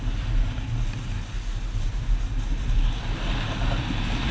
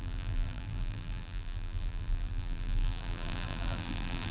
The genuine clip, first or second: first